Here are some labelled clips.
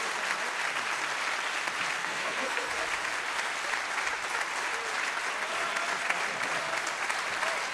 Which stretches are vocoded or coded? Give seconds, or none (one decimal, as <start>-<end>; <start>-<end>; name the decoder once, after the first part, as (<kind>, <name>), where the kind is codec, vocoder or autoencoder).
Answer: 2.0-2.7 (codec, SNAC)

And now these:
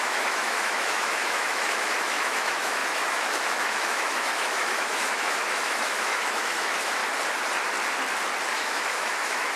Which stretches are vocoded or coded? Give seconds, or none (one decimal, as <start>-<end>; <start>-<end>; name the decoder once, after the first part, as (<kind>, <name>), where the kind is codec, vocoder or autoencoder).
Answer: 0.0-7.0 (autoencoder, DAC-VAE); 8.5-9.6

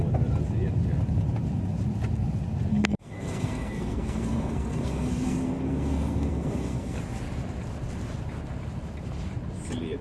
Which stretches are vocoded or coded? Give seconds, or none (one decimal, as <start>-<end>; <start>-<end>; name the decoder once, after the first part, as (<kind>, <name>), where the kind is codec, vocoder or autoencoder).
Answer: 2.7-7.0 (codec, SNAC)

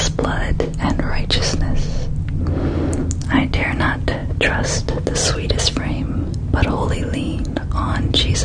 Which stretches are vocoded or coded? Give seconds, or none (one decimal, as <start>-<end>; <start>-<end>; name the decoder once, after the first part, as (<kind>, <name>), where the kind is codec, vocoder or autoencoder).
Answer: none

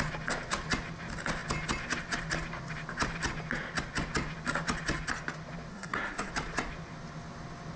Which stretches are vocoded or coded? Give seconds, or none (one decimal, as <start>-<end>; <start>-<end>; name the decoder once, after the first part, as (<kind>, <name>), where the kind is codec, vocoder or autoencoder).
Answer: 5.7-6.3 (codec, SNAC)

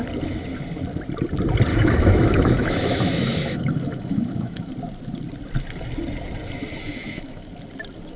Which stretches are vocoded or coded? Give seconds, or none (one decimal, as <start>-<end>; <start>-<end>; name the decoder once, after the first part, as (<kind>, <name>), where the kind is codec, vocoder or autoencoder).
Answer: 1.7-4.7 (autoencoder, DAC-VAE); 6.8-7.5

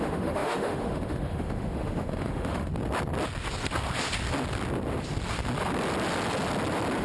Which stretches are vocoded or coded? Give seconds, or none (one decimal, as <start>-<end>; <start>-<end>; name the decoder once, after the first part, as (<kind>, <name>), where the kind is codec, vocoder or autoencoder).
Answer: 0.0-2.7 (autoencoder, DAC-VAE)

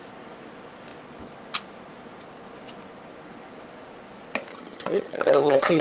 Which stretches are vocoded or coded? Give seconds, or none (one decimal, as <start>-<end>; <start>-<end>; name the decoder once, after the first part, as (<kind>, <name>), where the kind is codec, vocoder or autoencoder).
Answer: 4.5-5.8 (vocoder, HiFi-GAN)